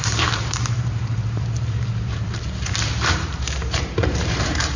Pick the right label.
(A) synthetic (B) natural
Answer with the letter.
A